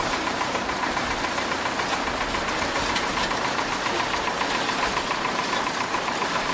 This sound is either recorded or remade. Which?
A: recorded